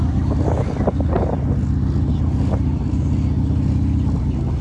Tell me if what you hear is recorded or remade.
recorded